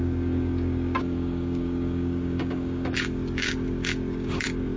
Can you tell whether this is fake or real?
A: fake